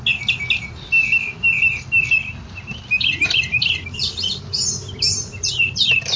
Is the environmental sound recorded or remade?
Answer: recorded